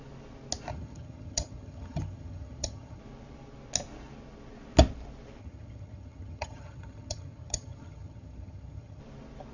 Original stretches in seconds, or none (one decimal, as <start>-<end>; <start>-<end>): 0.0-0.7; 3.0-5.4; 9.0-9.5